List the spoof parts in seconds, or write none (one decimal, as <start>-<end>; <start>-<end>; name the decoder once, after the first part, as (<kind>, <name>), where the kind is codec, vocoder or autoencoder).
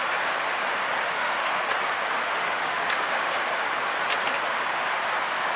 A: 1.0-1.6 (autoencoder, DAC-VAE); 2.2-3.3